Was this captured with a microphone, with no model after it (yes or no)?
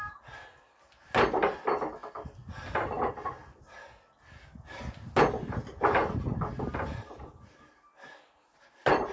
yes